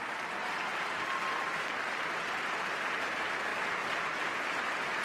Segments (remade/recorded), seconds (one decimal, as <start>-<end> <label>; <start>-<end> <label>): 0.0-5.0 recorded